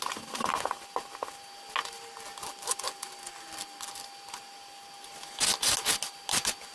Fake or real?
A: real